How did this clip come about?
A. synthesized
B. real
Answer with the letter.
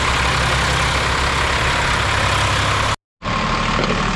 B